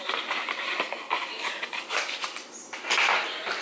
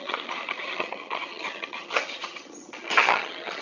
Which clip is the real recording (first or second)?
first